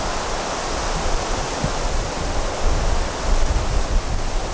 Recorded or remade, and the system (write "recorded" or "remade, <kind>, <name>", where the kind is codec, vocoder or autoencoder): recorded